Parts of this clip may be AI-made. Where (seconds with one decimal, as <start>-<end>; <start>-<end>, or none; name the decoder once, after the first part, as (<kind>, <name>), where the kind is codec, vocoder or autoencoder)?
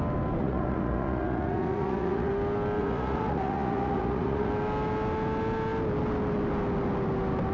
0.4-2.3 (vocoder, Vocos); 2.8-4.5